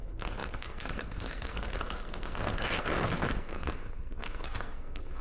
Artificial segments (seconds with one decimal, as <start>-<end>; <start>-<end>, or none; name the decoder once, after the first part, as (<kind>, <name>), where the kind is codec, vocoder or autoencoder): 0.0-5.2 (codec, SNAC)